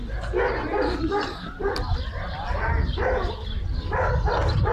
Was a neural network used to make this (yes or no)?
no